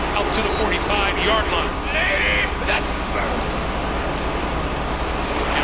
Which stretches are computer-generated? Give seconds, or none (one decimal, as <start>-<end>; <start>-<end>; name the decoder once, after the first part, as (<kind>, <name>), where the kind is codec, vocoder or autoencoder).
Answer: none